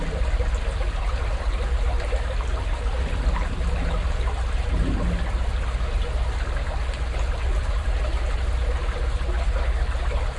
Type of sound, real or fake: real